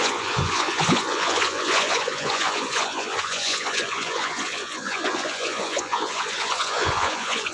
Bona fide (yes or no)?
no